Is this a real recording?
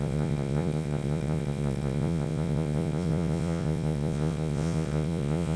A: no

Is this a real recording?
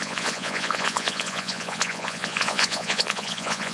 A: no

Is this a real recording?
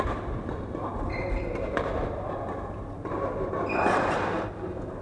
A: yes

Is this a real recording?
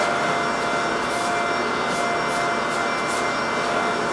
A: yes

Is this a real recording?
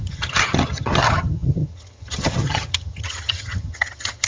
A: no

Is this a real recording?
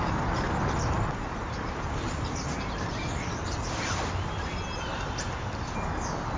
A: yes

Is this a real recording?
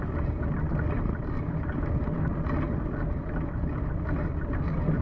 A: yes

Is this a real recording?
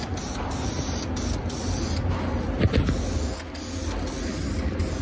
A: yes